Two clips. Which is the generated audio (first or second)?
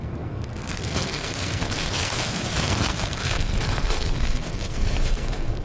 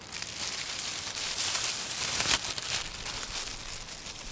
first